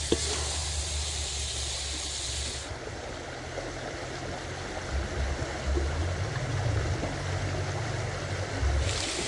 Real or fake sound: real